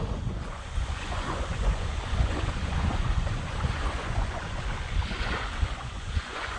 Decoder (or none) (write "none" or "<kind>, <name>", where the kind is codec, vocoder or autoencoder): vocoder, Vocos